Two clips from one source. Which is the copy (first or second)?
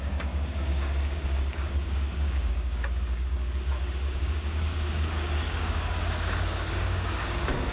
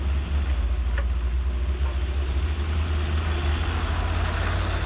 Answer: first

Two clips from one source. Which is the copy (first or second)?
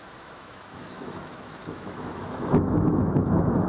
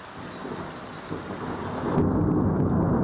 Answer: first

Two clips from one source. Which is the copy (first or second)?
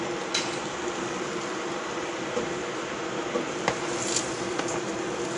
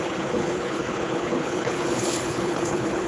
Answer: second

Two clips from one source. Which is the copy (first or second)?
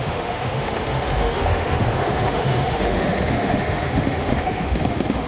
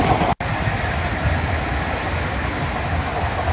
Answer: first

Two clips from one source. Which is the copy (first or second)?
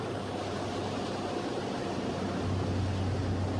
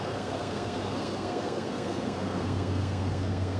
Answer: second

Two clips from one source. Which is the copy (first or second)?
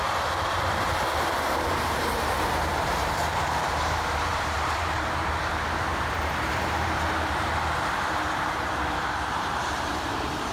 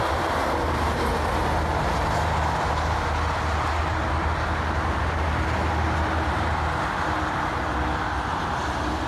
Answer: first